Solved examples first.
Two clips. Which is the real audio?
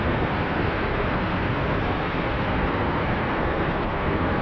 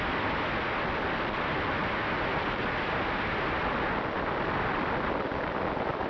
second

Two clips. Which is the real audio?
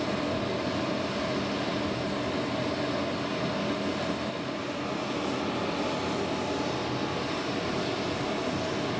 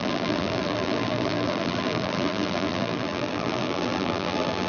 first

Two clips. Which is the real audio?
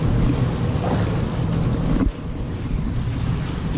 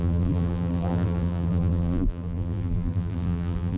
first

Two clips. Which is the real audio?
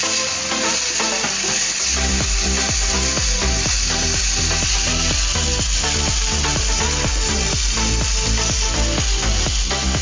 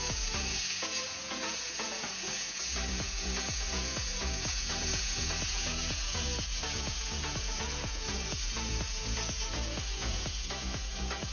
first